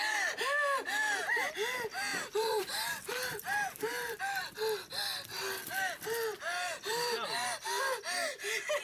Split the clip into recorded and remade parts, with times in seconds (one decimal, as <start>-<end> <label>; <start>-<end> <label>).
0.0-2.1 recorded; 2.1-4.2 remade; 4.2-6.9 recorded; 6.9-7.6 remade; 7.6-8.8 recorded